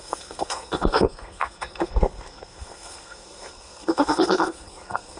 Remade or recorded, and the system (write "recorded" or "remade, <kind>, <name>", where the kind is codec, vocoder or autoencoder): remade, codec, SNAC